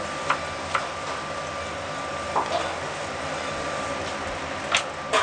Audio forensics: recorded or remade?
recorded